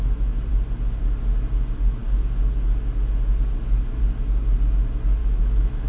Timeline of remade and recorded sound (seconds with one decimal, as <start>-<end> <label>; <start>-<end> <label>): 0.0-5.2 recorded; 5.2-5.9 remade